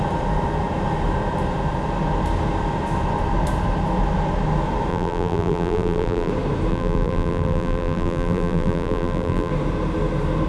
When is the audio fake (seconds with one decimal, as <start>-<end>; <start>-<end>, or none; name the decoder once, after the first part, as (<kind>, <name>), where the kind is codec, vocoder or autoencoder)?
4.9-6.3 (vocoder, BigVGAN v2); 6.7-9.5